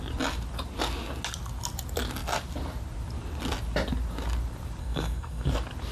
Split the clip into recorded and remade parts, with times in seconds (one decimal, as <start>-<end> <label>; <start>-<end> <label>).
0.0-4.8 recorded; 4.8-5.5 remade; 5.5-5.9 recorded